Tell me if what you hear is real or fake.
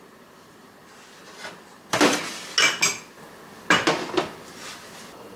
real